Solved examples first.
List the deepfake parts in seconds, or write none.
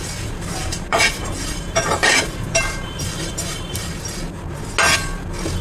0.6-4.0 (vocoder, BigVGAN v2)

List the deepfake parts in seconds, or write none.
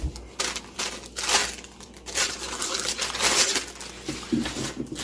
1.4-3.4 (vocoder, BigVGAN v2)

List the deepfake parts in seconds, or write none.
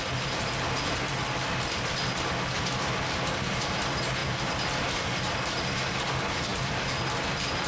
none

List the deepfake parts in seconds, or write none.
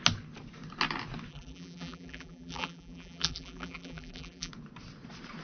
1.3-4.5 (vocoder, BigVGAN v2)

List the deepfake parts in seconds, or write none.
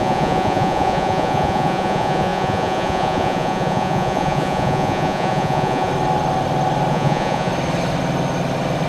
0.0-5.9 (vocoder, Vocos); 6.9-7.5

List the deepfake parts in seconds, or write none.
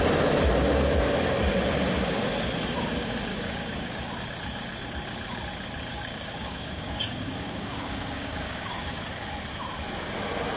3.3-4.1 (codec, DAC); 5.9-9.1